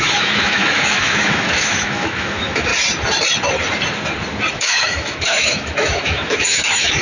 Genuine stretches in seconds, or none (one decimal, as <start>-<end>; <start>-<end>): 2.7-4.5